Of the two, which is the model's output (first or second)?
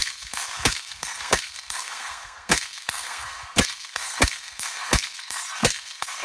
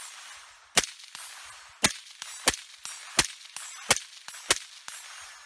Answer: first